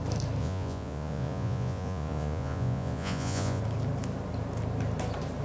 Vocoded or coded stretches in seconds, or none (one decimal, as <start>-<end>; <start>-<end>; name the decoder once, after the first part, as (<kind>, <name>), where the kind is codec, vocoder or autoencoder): 0.4-3.6 (vocoder, Vocos)